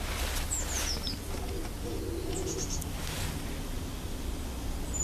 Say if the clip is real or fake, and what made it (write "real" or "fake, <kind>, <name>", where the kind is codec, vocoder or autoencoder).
real